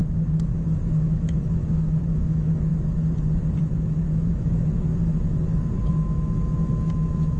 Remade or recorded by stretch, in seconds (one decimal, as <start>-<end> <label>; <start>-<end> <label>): 0.0-2.7 remade; 2.7-3.6 recorded; 3.6-4.9 remade; 4.9-5.9 recorded; 5.9-7.4 remade